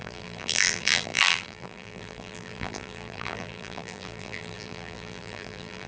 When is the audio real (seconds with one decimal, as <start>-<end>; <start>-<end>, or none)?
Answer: none